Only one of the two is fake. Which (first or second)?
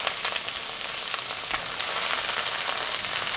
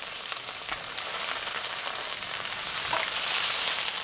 second